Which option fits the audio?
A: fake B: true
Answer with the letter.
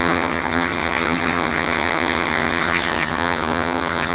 A